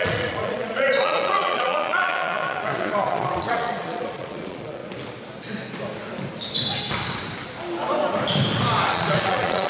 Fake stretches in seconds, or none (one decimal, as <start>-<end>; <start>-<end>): 0.0-4.8; 8.9-9.7